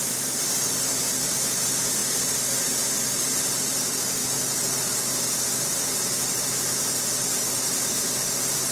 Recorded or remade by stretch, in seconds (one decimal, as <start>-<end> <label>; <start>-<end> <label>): 0.0-8.7 recorded